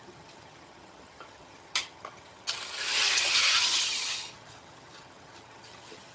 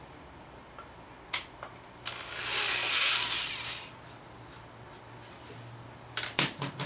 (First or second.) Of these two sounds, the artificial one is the first